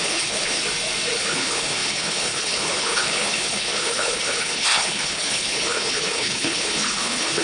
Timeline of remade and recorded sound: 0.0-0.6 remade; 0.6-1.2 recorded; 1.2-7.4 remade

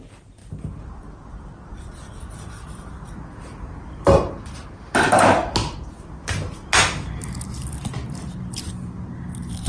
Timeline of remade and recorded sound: 0.0-1.7 recorded; 1.7-4.4 remade; 4.4-5.6 recorded; 5.6-6.7 remade; 6.7-9.7 recorded